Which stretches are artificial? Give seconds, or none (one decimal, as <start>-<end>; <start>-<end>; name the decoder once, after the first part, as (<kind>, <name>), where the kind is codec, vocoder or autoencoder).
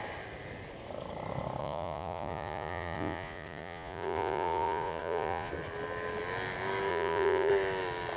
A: 1.6-5.5 (vocoder, Vocos); 6.9-7.5